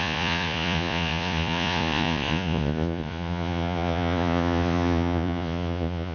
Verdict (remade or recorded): remade